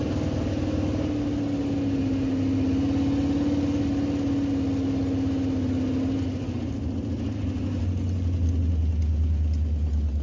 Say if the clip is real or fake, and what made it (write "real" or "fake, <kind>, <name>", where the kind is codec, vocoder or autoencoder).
real